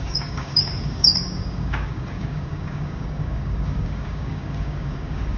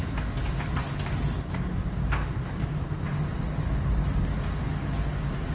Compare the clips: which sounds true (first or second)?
second